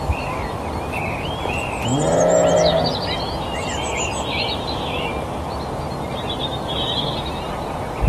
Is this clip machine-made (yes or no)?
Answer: no